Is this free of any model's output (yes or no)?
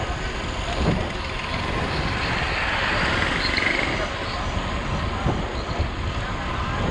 yes